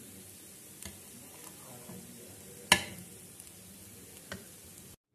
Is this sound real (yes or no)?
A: yes